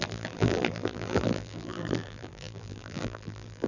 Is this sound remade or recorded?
remade